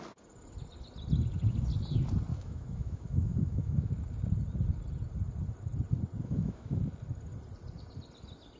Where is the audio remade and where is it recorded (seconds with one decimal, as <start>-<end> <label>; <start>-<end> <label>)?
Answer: 0.0-2.3 recorded; 2.3-3.9 remade; 3.9-6.2 recorded; 6.2-6.8 remade; 6.8-8.6 recorded